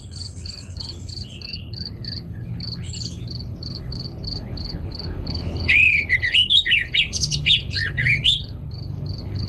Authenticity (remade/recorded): remade